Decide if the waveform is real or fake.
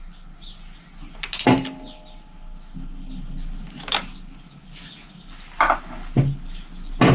real